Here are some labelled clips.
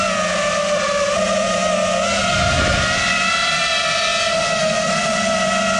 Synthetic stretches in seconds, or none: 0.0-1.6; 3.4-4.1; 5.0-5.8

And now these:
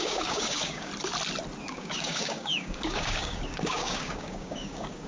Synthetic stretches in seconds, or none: 0.0-0.9; 1.6-5.1